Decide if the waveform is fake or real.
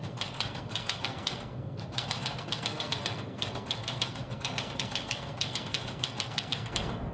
fake